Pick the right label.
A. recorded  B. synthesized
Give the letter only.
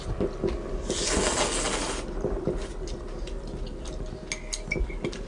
A